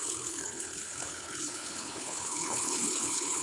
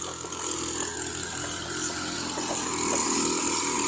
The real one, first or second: second